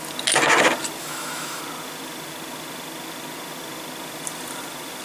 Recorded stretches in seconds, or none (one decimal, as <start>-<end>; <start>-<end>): 0.0-1.0; 1.6-5.0